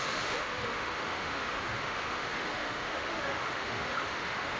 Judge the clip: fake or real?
fake